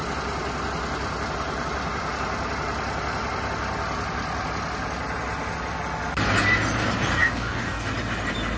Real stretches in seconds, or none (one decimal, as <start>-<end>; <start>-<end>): 0.0-7.2; 7.9-8.6